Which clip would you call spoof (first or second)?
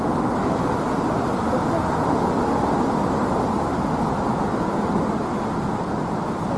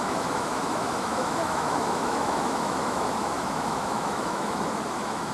second